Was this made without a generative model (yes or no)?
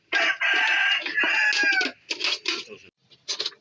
yes